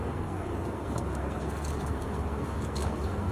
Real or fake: fake